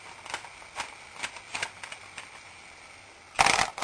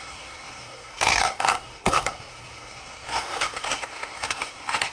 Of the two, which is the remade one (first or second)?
second